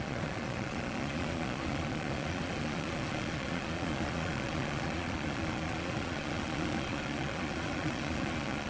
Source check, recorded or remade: remade